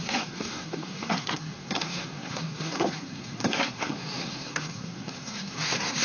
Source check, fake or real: fake